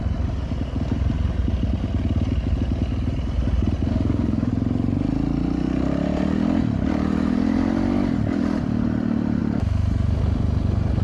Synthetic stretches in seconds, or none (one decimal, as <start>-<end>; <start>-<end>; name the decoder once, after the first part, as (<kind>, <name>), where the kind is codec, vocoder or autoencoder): 3.9-4.5 (autoencoder, DAC-VAE)